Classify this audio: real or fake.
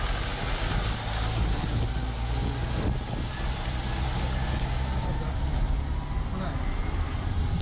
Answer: real